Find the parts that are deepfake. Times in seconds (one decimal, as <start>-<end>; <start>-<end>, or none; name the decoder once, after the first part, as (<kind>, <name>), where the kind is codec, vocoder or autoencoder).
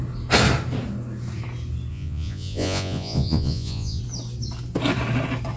1.9-4.0 (vocoder, Vocos)